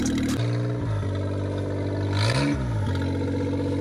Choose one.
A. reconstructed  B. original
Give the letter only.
B